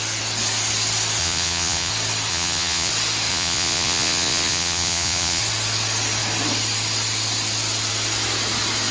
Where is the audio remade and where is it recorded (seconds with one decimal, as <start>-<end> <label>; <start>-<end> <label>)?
0.0-1.2 recorded; 1.2-1.9 remade; 1.9-2.3 recorded; 2.3-2.9 remade; 2.9-3.3 recorded; 3.3-5.4 remade; 5.4-8.9 recorded